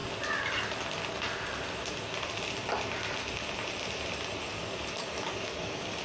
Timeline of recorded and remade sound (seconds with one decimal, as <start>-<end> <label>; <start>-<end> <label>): 0.0-4.5 recorded; 4.5-6.0 remade